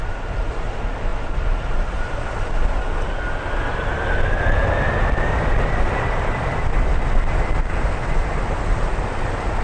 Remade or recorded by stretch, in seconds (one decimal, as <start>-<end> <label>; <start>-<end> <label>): 0.0-9.6 recorded